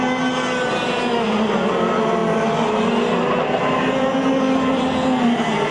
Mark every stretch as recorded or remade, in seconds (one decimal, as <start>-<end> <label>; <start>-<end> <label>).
0.0-5.7 recorded